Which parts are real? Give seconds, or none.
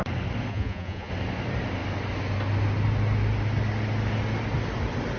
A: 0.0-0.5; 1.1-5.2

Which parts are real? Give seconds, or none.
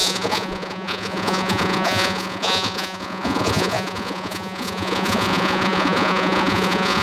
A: none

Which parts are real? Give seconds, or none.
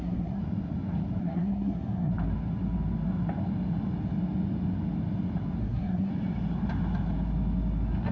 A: 0.4-1.2; 2.1-5.6; 6.1-8.1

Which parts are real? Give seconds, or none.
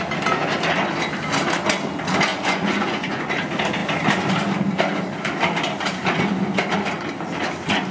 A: 0.0-2.3; 3.3-7.9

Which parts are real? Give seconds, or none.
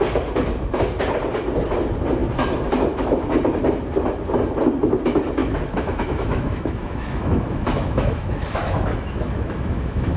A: 0.0-5.4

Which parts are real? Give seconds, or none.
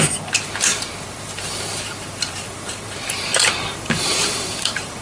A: none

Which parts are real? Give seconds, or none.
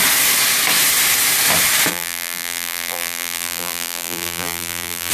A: 0.0-1.9